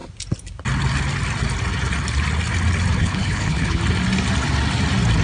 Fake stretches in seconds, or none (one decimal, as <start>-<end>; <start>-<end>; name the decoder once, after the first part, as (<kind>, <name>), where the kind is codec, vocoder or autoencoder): 3.0-3.8 (codec, HILCodec)